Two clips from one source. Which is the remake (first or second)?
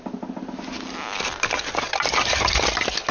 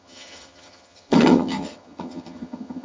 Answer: second